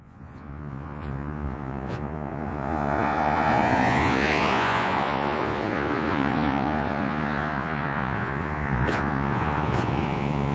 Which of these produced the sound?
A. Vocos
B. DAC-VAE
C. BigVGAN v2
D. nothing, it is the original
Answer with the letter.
A